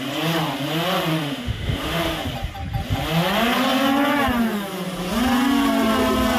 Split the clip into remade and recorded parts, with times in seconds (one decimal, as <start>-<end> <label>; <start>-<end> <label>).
0.0-1.1 recorded; 1.1-2.2 remade; 2.2-6.4 recorded